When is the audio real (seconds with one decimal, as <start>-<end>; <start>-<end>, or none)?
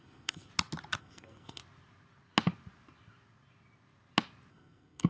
0.5-1.0; 1.6-4.5